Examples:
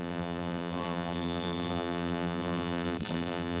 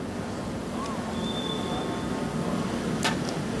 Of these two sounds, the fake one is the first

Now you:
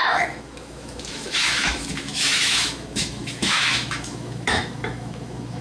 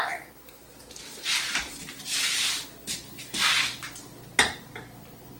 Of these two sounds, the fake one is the first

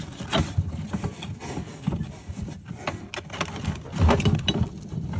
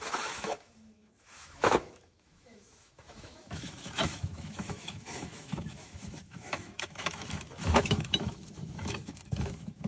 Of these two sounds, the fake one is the second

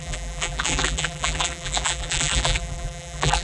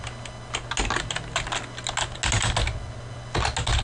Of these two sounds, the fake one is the first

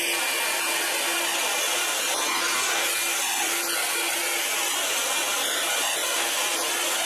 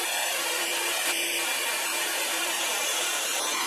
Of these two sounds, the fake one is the second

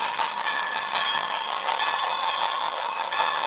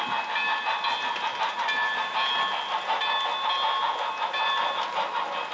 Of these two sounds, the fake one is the first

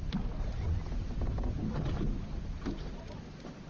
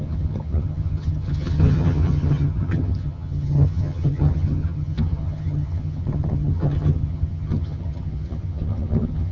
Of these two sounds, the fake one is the second